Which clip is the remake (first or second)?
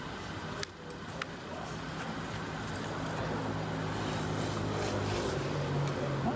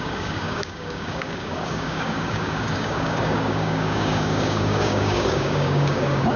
second